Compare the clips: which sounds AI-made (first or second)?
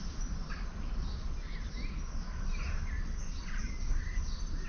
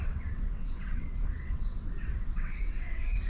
second